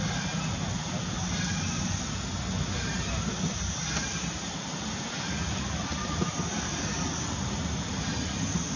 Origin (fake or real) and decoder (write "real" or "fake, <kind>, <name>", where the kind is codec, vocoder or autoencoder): real